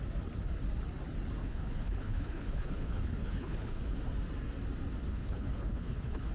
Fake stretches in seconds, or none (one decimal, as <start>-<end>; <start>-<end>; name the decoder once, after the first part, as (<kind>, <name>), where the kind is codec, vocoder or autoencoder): 1.4-3.8 (codec, HILCodec); 5.1-6.3